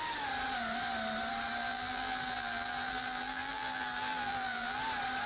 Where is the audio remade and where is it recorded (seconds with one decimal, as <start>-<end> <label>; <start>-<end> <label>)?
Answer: 0.0-1.6 recorded; 1.6-4.8 remade; 4.8-5.3 recorded